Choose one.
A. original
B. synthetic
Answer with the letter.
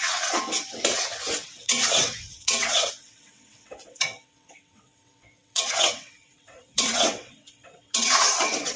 B